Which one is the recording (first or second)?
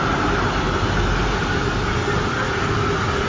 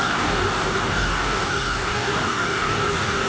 first